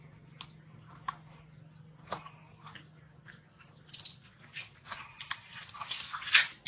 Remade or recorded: recorded